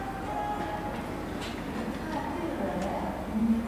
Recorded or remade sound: recorded